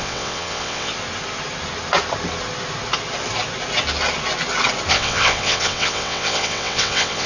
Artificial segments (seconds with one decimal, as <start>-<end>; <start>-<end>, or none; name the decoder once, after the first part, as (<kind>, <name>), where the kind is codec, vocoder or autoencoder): 0.0-0.9 (vocoder, WaveNeXt); 4.9-7.3